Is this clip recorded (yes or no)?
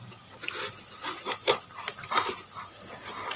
yes